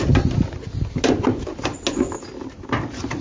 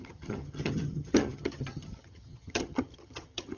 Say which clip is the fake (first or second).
second